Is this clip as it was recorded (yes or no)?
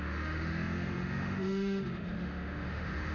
no